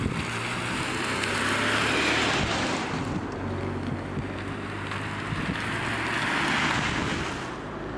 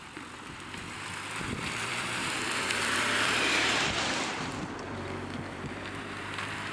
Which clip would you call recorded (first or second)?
first